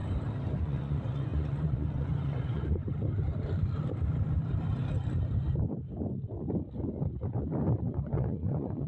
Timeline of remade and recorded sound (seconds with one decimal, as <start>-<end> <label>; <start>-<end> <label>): 0.0-0.6 recorded; 0.6-2.8 remade; 2.8-8.0 recorded; 8.0-8.9 remade